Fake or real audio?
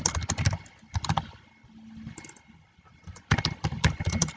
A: real